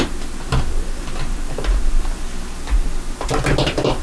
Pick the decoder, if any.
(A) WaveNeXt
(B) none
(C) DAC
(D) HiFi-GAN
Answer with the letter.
B